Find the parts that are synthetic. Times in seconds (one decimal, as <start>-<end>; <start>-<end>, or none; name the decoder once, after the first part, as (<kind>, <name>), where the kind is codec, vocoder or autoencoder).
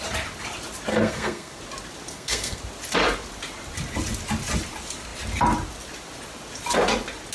0.9-1.6 (codec, SNAC); 2.1-2.6